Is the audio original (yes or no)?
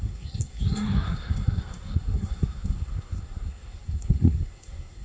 no